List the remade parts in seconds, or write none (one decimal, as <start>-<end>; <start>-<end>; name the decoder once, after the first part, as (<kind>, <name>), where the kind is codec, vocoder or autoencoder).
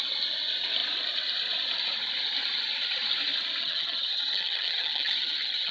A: 3.6-5.7 (vocoder, HiFi-GAN)